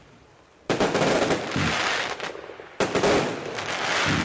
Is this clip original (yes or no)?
yes